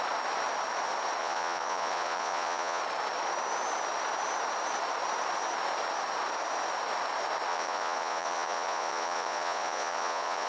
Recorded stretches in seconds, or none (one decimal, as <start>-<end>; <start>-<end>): 0.0-1.2; 2.8-7.5